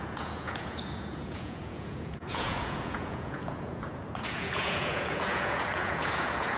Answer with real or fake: fake